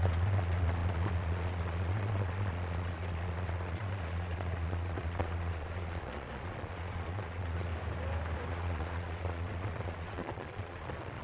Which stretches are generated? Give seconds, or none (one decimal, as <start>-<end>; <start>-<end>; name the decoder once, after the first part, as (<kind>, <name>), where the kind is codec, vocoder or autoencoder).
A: 0.0-7.7 (vocoder, Vocos); 8.5-11.2

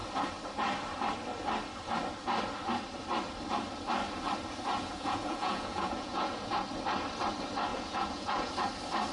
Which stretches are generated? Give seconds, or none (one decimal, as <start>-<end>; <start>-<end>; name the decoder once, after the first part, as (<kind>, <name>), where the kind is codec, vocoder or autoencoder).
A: 4.7-6.5 (vocoder, Vocos); 7.7-8.5